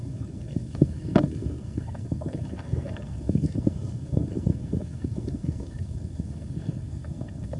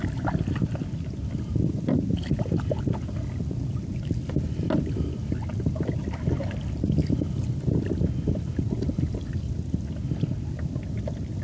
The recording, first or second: second